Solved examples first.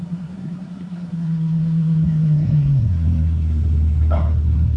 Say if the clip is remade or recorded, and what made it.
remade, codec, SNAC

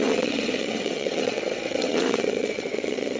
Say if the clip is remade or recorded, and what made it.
remade, vocoder, WaveNeXt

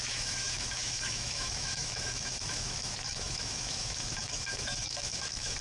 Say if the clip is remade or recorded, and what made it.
remade, autoencoder, DAC-VAE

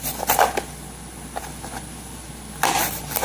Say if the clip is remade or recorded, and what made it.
recorded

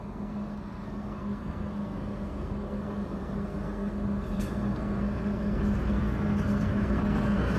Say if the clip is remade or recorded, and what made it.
remade, codec, SNAC